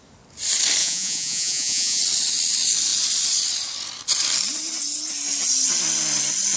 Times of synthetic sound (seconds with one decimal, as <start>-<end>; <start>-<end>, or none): 0.8-2.0